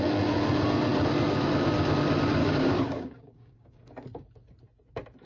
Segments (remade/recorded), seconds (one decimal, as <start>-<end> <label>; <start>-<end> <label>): 0.0-2.4 recorded; 2.4-3.9 remade; 3.9-5.3 recorded